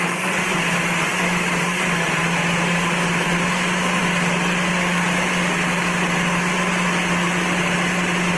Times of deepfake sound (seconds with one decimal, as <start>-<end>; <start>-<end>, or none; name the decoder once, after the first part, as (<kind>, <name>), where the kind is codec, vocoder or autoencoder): none